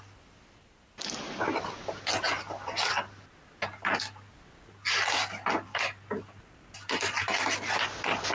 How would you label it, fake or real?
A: real